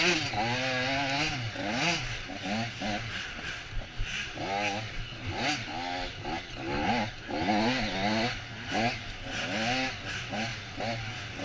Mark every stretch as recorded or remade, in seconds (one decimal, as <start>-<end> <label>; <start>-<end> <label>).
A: 0.0-11.4 recorded